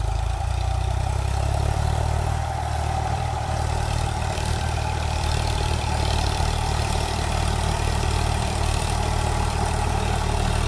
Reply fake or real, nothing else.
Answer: fake